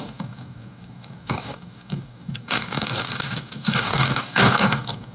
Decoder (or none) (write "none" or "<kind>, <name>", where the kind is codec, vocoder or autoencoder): codec, DAC